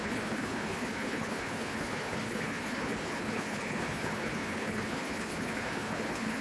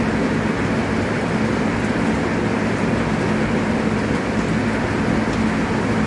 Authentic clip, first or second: second